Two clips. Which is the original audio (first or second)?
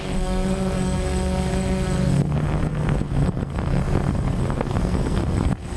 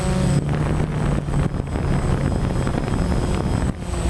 second